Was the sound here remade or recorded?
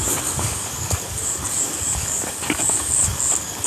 remade